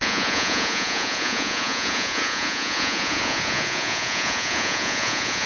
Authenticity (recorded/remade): remade